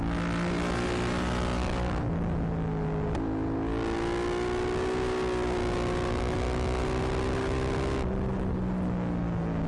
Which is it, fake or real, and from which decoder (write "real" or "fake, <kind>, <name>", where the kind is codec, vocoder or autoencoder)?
real